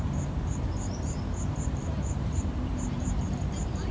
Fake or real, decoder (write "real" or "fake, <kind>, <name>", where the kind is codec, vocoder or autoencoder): fake, vocoder, BigVGAN v2